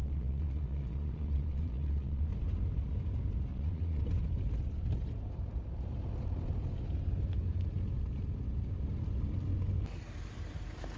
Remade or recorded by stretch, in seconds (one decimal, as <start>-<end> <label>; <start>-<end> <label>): 0.0-2.3 remade; 2.3-3.5 recorded; 3.5-4.0 remade; 4.0-11.0 recorded